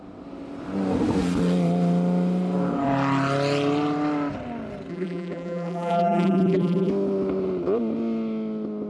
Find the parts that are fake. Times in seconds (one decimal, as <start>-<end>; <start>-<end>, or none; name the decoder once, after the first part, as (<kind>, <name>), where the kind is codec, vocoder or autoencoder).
4.9-6.9 (vocoder, BigVGAN v2)